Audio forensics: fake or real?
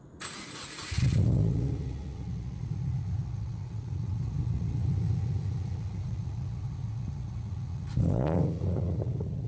fake